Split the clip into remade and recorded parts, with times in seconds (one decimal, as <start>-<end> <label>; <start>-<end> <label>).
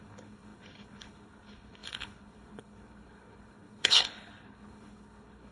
0.0-5.5 remade